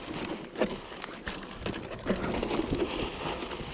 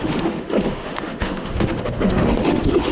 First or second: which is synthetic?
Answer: second